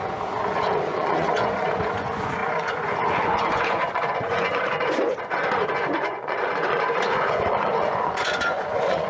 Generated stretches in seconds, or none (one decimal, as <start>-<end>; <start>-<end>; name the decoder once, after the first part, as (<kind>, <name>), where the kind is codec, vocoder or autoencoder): 0.0-9.1 (vocoder, Vocos)